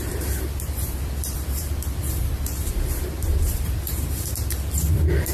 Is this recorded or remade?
remade